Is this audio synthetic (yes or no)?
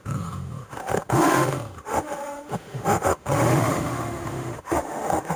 yes